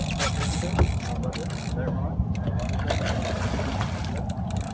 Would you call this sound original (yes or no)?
yes